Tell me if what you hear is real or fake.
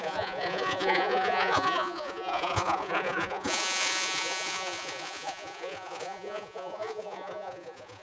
fake